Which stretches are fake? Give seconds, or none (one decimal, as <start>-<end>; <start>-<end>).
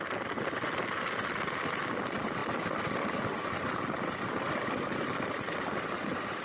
none